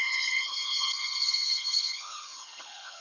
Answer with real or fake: fake